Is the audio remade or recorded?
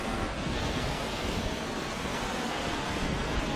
remade